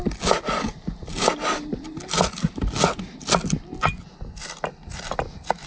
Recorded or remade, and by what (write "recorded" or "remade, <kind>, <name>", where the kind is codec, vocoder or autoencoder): recorded